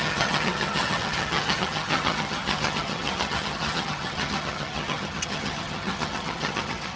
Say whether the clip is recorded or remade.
remade